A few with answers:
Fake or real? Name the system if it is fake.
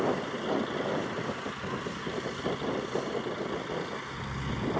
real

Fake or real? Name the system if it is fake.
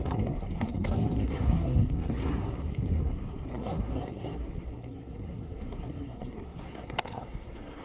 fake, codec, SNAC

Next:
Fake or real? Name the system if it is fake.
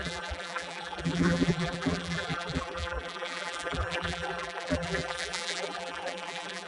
fake, vocoder, BigVGAN v2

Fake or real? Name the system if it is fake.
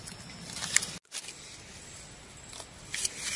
real